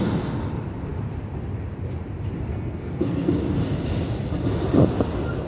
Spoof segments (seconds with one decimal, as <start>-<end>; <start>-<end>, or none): 2.5-3.3